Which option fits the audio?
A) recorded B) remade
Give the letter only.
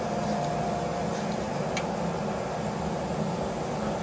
A